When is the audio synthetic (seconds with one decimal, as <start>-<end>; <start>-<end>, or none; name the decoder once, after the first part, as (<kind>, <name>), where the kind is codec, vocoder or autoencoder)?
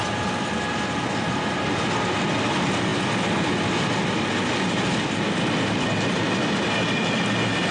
none